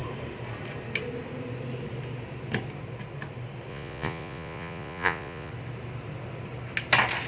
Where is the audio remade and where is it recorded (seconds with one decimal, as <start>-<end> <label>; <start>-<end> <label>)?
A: 0.0-3.7 recorded; 3.7-5.5 remade; 5.5-7.3 recorded